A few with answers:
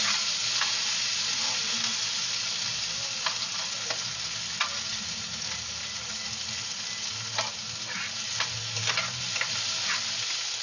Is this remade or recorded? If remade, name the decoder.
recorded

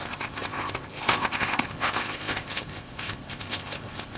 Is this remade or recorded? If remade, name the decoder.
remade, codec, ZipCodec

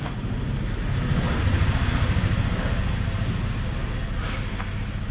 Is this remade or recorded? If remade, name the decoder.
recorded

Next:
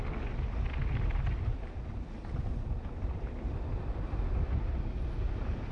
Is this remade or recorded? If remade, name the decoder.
recorded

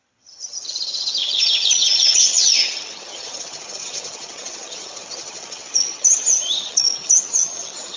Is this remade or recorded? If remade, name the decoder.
remade, vocoder, HiFi-GAN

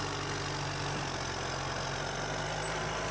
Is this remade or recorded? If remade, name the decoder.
recorded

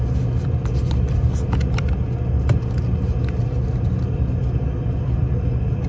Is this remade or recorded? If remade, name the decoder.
recorded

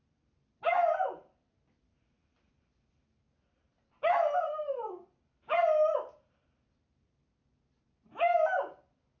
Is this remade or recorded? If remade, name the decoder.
recorded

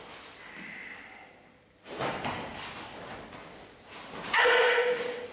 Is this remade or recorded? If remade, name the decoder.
recorded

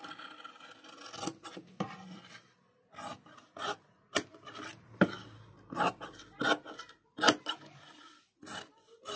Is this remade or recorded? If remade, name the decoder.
recorded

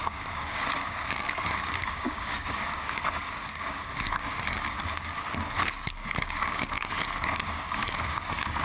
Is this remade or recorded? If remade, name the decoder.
remade, codec, DAC